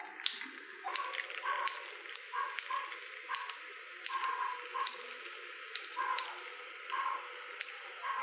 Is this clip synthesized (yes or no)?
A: no